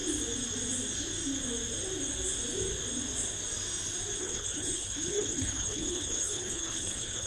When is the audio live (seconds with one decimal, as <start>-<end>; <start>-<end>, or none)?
0.0-4.2